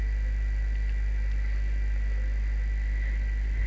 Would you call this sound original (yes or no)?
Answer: yes